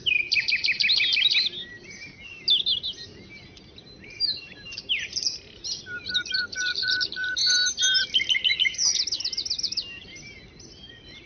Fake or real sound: real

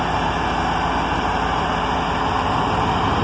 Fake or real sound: real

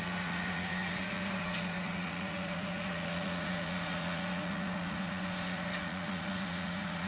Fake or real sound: fake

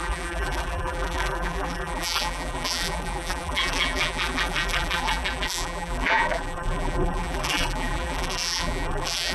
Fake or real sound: fake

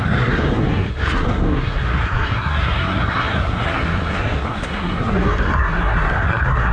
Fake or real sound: fake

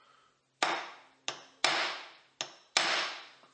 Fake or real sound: real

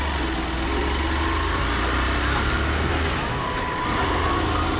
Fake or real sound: real